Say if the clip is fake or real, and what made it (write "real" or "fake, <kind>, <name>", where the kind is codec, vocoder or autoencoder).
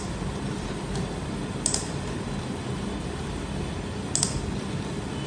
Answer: real